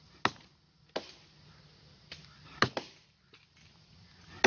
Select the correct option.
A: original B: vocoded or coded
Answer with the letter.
A